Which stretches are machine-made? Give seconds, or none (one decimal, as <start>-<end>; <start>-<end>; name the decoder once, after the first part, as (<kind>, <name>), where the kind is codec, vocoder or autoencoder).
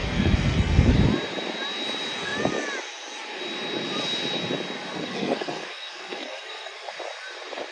0.0-0.9 (codec, SNAC); 4.9-6.9